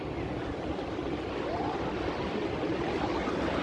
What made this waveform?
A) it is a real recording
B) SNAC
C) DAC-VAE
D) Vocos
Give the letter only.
A